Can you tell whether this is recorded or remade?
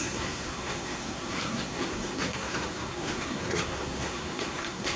remade